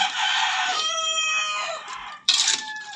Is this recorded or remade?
remade